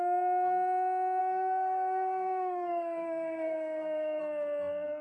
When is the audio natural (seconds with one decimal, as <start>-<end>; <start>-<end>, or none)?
0.0-1.2; 4.2-5.0